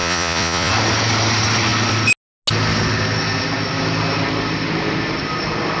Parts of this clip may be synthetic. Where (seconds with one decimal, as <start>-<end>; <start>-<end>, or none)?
0.0-0.7

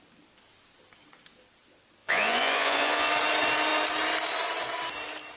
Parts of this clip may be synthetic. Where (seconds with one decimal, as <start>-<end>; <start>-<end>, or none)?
2.0-3.1

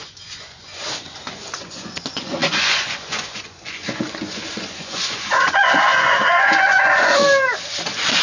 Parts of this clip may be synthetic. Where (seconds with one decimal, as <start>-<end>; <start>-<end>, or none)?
0.0-7.2

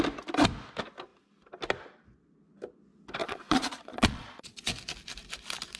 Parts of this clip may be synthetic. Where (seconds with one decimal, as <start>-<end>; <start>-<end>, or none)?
3.2-4.7

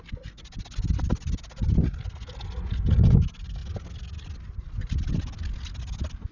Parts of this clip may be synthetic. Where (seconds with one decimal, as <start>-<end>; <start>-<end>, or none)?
none

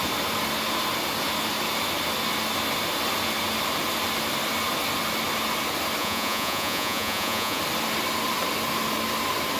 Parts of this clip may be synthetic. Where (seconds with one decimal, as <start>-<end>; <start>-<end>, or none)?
6.0-7.6